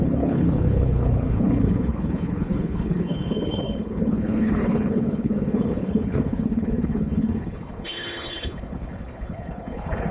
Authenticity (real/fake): fake